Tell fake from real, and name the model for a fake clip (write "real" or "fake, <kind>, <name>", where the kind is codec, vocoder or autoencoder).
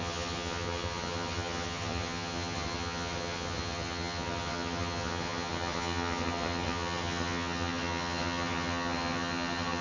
fake, vocoder, HiFi-GAN